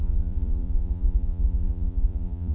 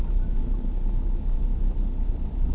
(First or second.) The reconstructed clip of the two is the first